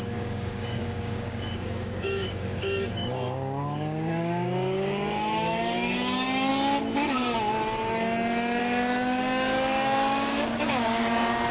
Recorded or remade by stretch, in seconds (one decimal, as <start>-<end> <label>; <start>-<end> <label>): 0.0-6.5 remade; 6.5-8.6 recorded; 8.6-11.5 remade